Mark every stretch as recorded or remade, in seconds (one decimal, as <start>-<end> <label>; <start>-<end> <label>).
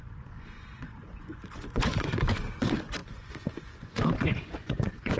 0.0-5.2 remade